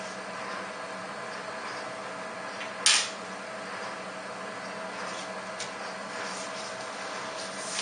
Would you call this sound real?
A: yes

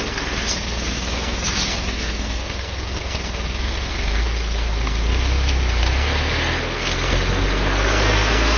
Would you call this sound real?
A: no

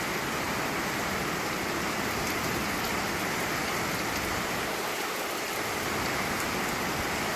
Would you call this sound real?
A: yes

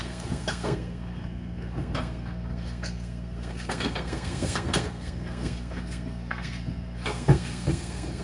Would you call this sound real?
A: no